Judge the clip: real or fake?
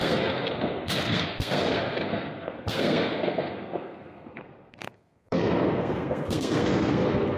fake